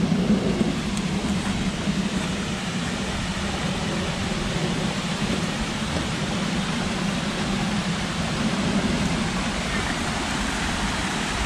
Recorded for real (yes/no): no